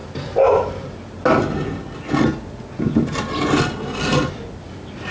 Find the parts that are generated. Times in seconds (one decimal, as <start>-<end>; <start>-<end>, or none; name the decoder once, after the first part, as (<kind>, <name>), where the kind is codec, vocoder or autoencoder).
none